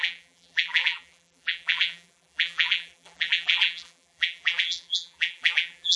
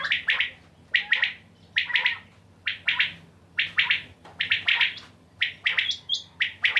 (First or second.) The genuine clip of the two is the second